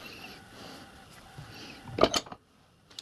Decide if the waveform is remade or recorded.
recorded